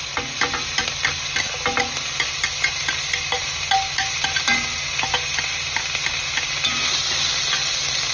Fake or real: real